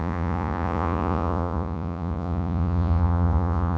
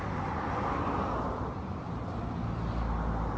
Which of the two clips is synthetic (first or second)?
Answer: first